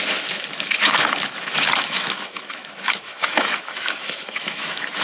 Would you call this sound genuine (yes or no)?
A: no